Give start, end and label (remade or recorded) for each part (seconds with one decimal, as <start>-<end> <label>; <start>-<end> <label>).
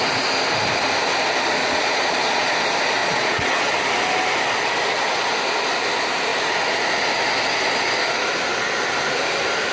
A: 0.0-1.6 recorded; 1.6-2.5 remade; 2.5-3.0 recorded; 3.0-3.7 remade; 3.7-9.7 recorded